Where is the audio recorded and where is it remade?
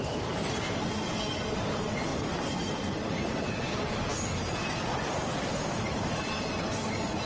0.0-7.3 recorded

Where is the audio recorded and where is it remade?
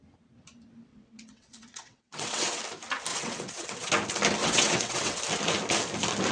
0.0-0.9 recorded; 0.9-2.6 remade; 2.6-3.1 recorded; 3.1-3.9 remade; 3.9-4.4 recorded; 4.4-5.2 remade; 5.2-6.3 recorded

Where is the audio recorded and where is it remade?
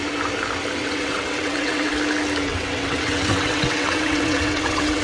0.0-0.8 recorded; 0.8-1.9 remade; 1.9-2.5 recorded; 2.5-5.0 remade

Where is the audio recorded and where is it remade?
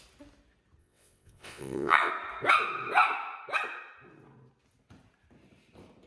0.0-0.8 recorded; 0.8-2.1 remade; 2.1-6.1 recorded